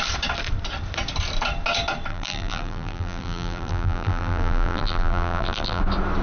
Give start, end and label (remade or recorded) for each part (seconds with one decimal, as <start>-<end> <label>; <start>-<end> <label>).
0.0-2.1 recorded; 2.1-5.8 remade; 5.8-6.2 recorded